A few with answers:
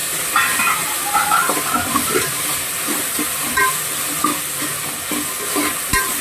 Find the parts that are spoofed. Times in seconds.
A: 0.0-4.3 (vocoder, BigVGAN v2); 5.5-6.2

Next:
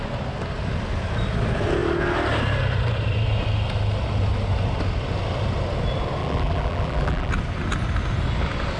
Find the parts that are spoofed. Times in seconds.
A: 6.2-7.3 (vocoder, BigVGAN v2)

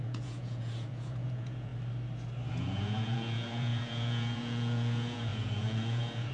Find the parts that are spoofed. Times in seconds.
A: 0.0-1.7 (vocoder, Vocos); 2.5-6.3

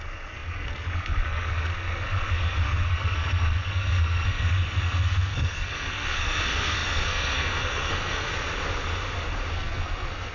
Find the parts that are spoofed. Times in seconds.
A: 0.0-8.3 (codec, SNAC); 9.5-10.3